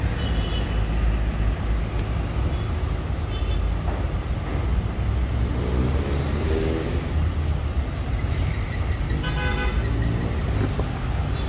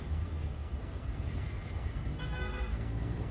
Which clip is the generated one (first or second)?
second